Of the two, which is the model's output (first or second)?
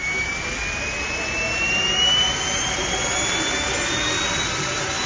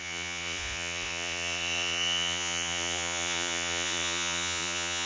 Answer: second